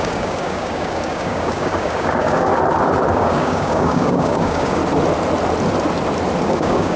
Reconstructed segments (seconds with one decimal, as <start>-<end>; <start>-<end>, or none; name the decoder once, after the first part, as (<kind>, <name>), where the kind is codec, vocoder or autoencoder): 0.0-2.5 (codec, DAC); 3.1-4.8; 6.4-7.0